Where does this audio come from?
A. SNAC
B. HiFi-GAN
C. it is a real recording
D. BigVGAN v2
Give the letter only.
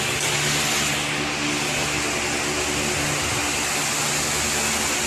C